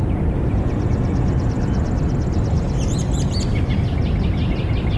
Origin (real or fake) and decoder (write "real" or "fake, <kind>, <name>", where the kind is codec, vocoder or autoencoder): real